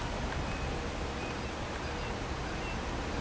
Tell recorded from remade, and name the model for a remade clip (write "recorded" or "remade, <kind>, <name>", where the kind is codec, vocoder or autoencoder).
recorded